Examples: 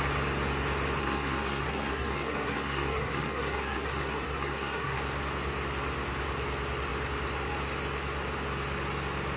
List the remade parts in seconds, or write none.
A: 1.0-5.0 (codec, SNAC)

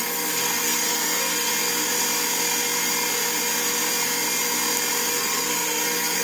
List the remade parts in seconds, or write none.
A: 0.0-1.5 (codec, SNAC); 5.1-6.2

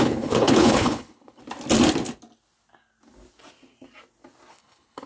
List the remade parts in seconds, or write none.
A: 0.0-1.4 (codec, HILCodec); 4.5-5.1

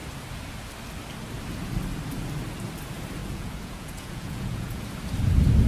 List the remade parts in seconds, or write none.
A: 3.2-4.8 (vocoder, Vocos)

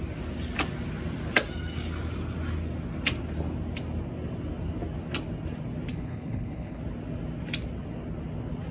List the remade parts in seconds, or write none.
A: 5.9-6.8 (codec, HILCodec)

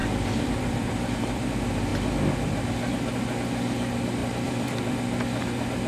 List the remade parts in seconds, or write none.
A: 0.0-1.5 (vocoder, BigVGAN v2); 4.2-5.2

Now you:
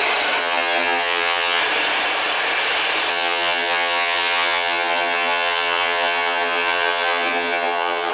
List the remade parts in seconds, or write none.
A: 0.4-1.6 (vocoder, HiFi-GAN); 3.1-8.1